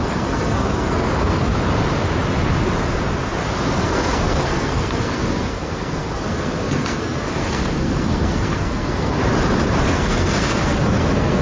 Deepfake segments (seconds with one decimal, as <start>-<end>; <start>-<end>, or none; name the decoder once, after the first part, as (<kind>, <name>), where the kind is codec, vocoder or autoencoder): 0.0-1.5 (codec, SNAC); 3.8-9.2; 9.9-11.4